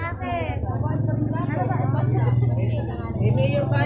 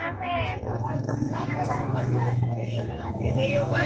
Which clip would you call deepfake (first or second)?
second